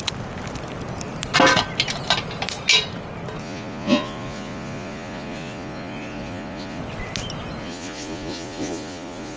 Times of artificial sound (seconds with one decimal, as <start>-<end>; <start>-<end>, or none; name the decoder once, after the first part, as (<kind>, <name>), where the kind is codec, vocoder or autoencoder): 3.4-6.8 (vocoder, Vocos); 7.6-9.4